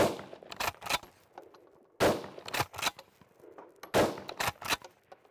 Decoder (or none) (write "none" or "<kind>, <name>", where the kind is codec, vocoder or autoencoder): none